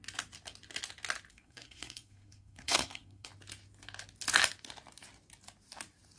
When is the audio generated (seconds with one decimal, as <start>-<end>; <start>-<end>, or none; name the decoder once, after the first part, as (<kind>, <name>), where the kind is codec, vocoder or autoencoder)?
1.3-3.3 (codec, SNAC)